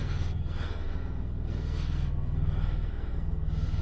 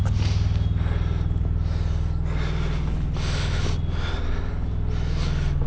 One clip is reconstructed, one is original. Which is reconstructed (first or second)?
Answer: first